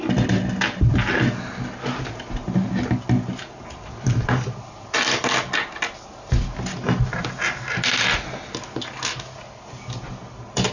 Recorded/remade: recorded